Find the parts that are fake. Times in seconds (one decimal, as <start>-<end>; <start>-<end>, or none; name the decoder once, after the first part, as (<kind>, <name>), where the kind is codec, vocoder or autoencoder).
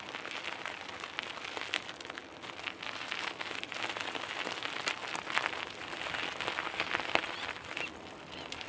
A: none